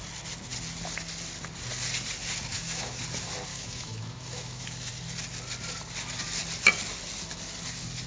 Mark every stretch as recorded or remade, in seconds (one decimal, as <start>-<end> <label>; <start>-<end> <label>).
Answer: 0.0-2.5 recorded; 2.5-3.0 remade; 3.0-3.5 recorded; 3.5-4.9 remade; 4.9-8.1 recorded